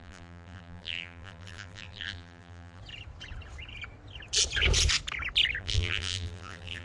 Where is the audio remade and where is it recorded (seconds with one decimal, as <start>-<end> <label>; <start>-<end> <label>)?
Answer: 0.0-2.8 remade; 2.8-5.6 recorded; 5.6-6.8 remade